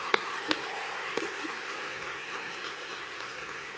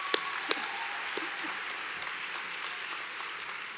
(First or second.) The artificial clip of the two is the first